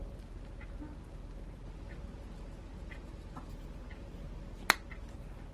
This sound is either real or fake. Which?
real